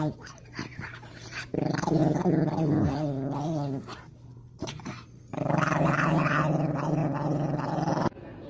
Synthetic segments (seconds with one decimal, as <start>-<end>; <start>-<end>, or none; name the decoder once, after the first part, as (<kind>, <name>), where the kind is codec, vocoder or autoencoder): 0.0-2.0 (vocoder, BigVGAN v2); 4.6-7.0